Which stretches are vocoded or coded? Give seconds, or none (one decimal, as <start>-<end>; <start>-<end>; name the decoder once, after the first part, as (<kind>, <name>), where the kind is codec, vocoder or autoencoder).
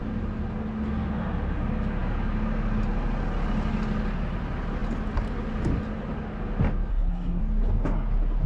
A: 6.9-7.4 (codec, SNAC)